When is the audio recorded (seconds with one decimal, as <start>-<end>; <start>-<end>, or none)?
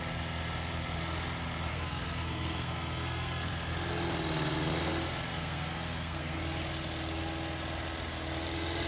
0.0-1.7; 3.5-5.3; 6.4-8.9